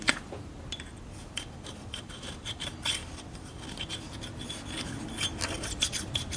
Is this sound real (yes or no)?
yes